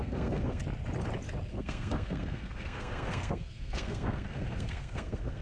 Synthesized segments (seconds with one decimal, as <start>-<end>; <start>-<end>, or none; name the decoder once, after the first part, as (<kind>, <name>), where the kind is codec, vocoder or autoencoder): 0.0-0.6 (codec, SNAC); 1.5-5.4

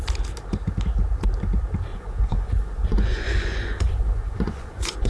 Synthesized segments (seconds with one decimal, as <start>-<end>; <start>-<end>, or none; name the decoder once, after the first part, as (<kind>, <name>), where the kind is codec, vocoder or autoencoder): 1.9-5.1 (vocoder, Vocos)

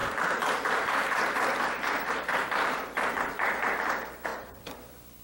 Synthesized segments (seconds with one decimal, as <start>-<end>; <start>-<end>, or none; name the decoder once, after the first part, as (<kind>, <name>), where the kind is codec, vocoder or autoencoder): 0.0-3.1 (vocoder, BigVGAN v2)

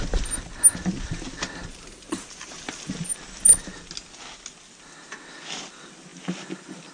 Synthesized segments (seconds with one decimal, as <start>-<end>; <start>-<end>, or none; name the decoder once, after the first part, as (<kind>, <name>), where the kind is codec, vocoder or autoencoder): 1.7-2.9 (vocoder, BigVGAN v2)

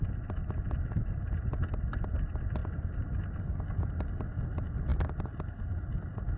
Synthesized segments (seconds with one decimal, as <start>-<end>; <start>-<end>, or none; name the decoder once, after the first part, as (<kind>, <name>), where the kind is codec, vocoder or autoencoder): none

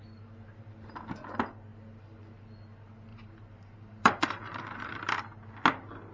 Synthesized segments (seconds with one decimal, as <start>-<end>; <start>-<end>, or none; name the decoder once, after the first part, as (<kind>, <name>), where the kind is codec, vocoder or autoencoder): 3.1-5.2 (vocoder, BigVGAN v2)

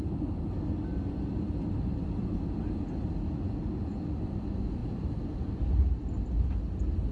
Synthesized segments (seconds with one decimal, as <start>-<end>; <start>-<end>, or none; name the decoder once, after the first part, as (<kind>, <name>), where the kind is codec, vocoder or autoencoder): 4.8-5.5 (vocoder, BigVGAN v2)